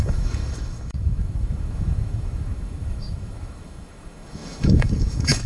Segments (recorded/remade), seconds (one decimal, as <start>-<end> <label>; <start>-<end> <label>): 0.0-5.5 remade